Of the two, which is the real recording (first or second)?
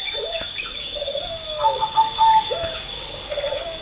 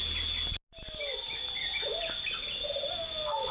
second